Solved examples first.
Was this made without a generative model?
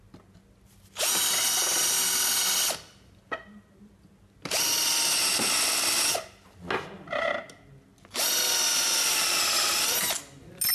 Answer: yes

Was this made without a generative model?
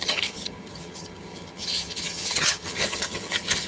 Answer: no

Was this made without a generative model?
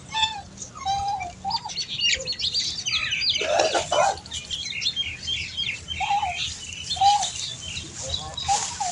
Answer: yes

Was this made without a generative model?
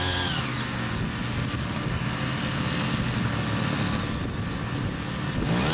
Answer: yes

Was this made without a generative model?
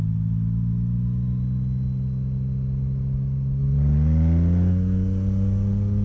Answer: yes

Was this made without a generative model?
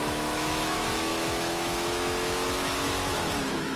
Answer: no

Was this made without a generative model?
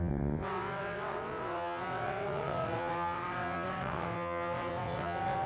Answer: no